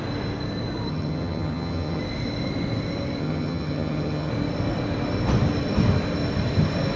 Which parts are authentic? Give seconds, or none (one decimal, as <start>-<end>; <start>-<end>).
0.0-0.9; 2.0-3.2; 4.3-7.0